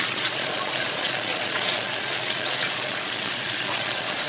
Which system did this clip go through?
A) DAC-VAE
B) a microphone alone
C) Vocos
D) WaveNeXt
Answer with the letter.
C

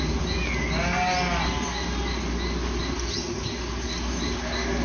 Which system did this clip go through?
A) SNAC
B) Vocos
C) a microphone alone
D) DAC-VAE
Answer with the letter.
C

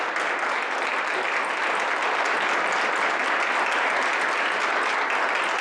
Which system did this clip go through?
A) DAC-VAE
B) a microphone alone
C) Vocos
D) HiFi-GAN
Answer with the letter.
B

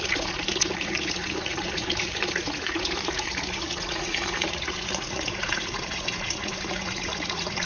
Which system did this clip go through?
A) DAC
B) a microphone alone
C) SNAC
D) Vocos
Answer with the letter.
D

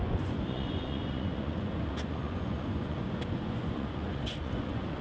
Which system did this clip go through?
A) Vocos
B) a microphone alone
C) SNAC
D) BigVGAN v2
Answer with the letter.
A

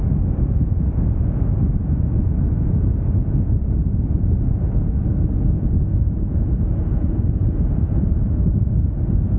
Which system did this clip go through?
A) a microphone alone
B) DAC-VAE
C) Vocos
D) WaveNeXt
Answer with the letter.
C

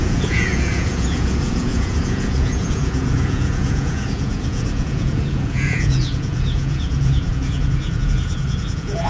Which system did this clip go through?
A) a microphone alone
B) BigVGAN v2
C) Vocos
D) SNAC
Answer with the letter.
C